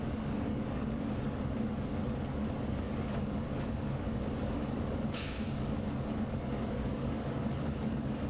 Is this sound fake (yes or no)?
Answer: yes